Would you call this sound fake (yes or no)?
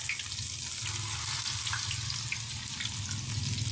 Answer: no